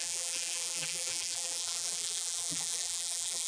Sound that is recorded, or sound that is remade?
remade